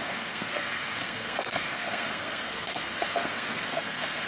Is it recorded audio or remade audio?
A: remade